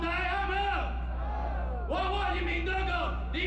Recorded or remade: recorded